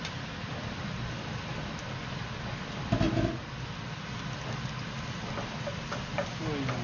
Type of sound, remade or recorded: recorded